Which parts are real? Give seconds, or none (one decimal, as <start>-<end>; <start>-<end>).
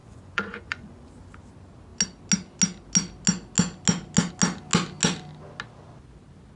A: 1.1-6.6